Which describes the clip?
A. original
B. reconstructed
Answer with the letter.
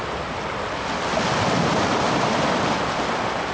A